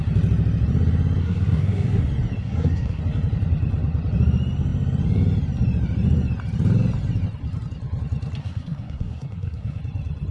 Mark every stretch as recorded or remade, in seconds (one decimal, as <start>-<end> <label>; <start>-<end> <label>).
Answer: 0.0-1.2 recorded; 1.2-2.0 remade; 2.0-2.4 recorded; 2.4-3.0 remade; 3.0-8.4 recorded; 8.4-9.8 remade; 9.8-10.3 recorded